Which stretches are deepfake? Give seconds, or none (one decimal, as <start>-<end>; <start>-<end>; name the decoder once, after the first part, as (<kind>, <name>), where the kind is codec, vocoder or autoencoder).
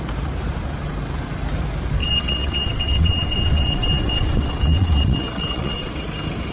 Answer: 2.0-5.9 (vocoder, WaveNeXt)